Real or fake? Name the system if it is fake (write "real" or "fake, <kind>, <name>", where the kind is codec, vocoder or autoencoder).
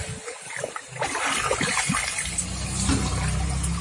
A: real